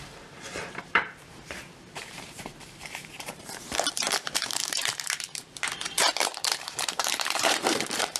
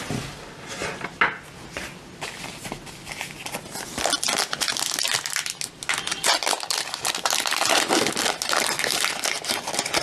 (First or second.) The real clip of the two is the second